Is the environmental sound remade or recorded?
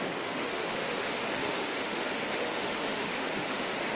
remade